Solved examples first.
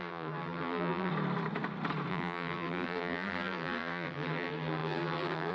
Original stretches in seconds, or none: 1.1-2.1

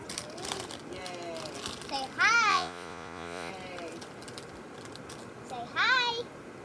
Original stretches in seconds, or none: 0.0-2.5; 3.5-6.6

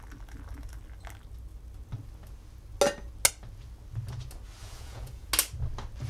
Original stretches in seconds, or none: 0.0-4.6; 5.3-6.1

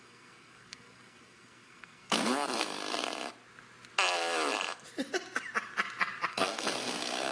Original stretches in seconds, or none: 2.8-6.3

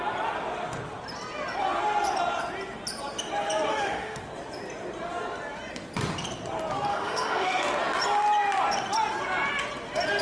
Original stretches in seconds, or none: 0.0-3.7; 4.2-6.9; 7.6-10.2

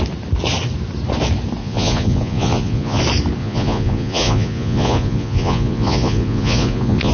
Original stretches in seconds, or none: 0.0-1.6; 3.0-3.4

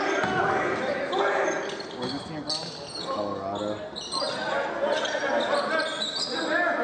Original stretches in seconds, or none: 0.0-6.8